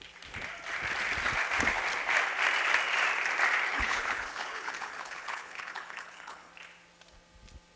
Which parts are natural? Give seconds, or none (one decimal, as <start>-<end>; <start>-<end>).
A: 0.0-3.7; 6.5-7.8